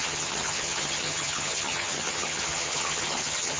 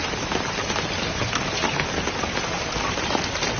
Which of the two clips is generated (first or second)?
first